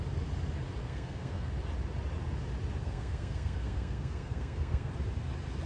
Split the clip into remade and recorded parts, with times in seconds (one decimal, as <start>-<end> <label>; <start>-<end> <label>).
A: 0.0-0.8 recorded; 0.8-1.5 remade; 1.5-2.8 recorded; 2.8-4.9 remade; 4.9-5.7 recorded